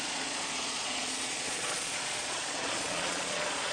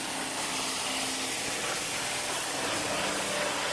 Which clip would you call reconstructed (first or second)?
first